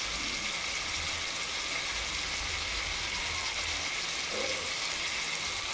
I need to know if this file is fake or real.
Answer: real